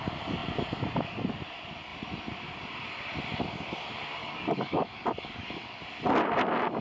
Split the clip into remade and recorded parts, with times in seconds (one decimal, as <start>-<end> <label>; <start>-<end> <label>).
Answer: 0.0-4.2 recorded; 4.2-5.8 remade; 5.8-6.8 recorded